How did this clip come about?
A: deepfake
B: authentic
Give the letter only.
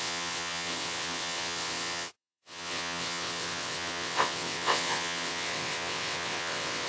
A